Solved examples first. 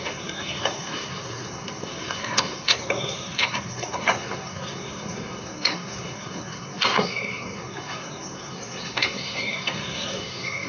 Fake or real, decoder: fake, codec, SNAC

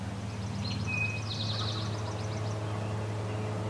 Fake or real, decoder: real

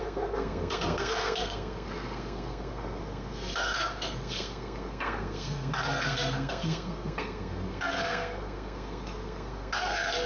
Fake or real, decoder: fake, codec, SNAC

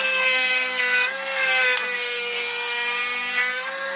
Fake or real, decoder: fake, codec, SNAC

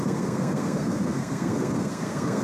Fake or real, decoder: fake, codec, SNAC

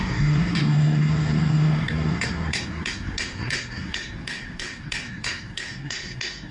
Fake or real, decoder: fake, codec, SNAC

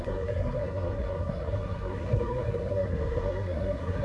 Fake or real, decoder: fake, codec, SNAC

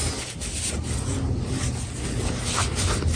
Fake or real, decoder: real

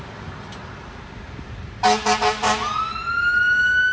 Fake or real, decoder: real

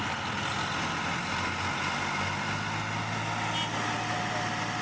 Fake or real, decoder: real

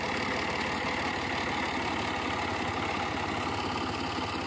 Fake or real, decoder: real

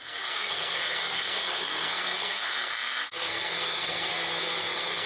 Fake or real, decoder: fake, codec, SNAC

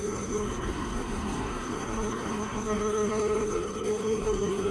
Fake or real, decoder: fake, codec, SNAC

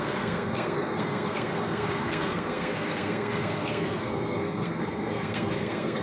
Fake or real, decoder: fake, codec, SNAC